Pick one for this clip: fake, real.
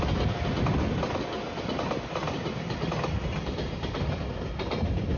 real